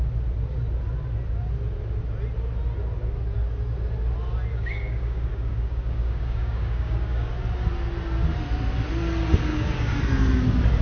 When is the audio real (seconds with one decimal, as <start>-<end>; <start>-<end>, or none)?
0.0-4.5; 7.3-9.5; 10.0-10.8